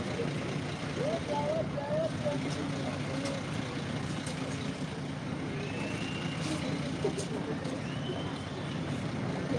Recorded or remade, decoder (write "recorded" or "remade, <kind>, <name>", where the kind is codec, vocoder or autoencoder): recorded